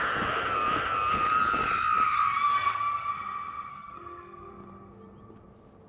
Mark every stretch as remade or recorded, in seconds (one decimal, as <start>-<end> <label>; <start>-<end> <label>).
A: 0.0-2.5 recorded; 2.5-3.1 remade; 3.1-3.7 recorded; 3.7-4.5 remade; 4.5-5.9 recorded